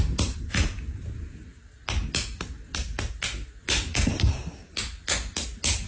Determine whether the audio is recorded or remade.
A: recorded